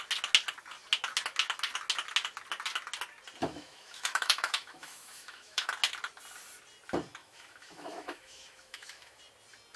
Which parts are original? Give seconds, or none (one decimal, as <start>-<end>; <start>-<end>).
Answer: 0.0-3.4; 5.7-7.2; 9.2-9.8